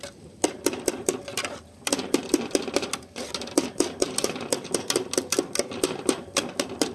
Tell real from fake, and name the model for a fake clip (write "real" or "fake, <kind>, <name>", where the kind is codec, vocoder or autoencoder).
real